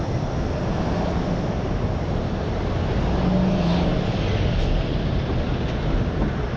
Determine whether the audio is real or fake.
real